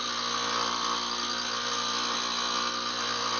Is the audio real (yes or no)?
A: yes